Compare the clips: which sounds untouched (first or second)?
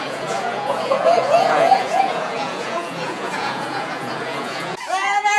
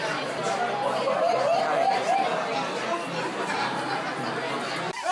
second